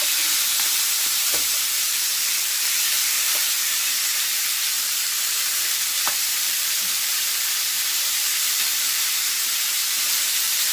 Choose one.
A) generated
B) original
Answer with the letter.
A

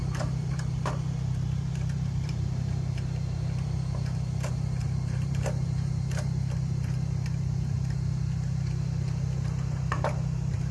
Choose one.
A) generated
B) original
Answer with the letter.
A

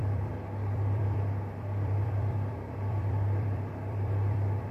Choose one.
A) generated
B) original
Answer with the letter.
A